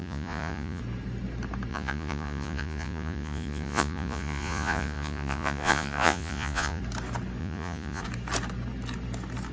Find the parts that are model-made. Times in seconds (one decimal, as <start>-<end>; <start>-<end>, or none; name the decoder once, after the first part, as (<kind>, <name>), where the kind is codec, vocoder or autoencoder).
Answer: 0.0-0.8 (vocoder, Vocos); 1.7-6.8; 7.4-8.0